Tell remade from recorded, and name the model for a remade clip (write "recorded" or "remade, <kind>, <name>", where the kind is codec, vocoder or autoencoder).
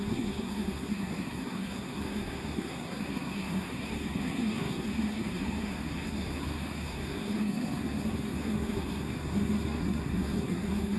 remade, codec, SNAC